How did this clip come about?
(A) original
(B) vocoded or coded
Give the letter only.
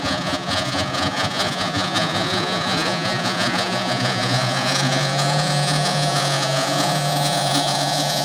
B